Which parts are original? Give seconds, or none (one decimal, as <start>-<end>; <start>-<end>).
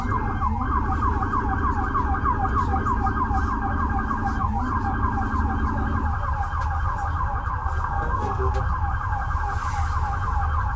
0.0-7.6; 8.5-10.8